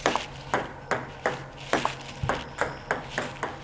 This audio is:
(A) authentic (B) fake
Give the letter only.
A